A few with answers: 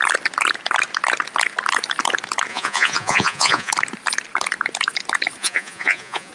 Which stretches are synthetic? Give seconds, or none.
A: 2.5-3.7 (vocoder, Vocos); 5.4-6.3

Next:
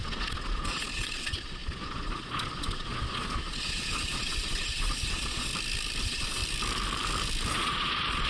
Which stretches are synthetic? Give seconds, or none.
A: 0.0-5.5 (vocoder, Vocos); 6.0-6.4; 7.5-8.3

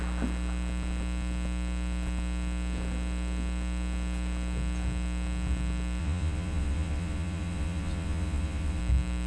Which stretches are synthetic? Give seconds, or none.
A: 6.0-8.8 (vocoder, Vocos)